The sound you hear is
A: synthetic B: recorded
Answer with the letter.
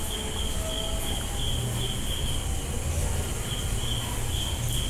B